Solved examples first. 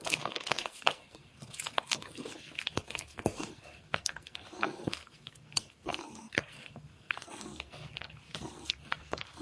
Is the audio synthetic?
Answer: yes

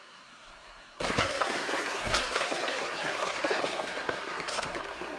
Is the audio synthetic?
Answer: yes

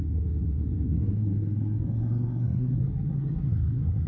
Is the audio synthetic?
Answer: yes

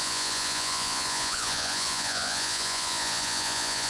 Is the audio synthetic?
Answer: yes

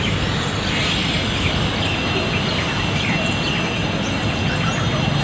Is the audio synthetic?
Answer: no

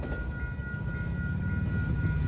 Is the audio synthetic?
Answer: no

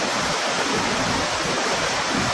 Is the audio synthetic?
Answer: no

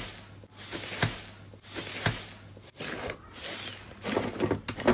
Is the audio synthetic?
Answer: no